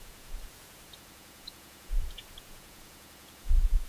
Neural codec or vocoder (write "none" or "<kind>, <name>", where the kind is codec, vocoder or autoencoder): vocoder, Vocos